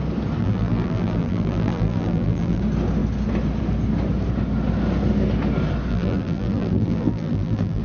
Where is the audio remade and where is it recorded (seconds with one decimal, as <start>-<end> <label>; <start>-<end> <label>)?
0.0-0.4 recorded; 0.4-2.6 remade; 2.6-5.9 recorded; 5.9-7.8 remade